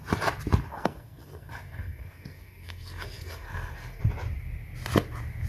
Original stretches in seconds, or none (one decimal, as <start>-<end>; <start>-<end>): 0.0-0.7; 4.0-5.5